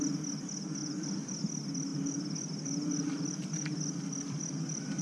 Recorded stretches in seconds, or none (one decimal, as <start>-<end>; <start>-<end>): 0.0-0.8; 1.4-1.9